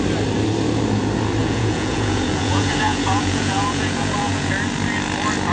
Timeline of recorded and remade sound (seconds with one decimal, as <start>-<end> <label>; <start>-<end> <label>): 0.0-1.4 recorded; 1.4-4.5 remade; 4.5-5.5 recorded